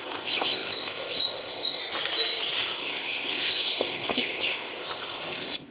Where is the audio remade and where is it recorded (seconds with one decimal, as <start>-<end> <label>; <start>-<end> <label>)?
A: 0.0-1.8 remade; 1.8-2.6 recorded; 2.6-5.7 remade